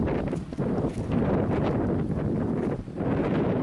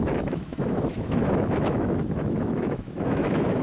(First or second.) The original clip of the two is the first